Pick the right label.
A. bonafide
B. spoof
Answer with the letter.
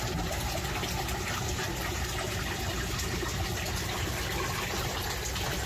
A